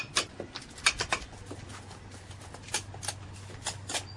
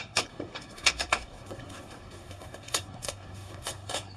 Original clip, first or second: first